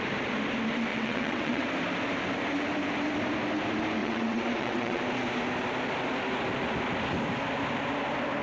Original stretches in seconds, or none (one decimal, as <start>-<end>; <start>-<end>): 0.0-0.9; 1.6-4.0; 5.0-8.4